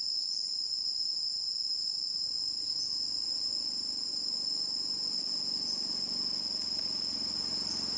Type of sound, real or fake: real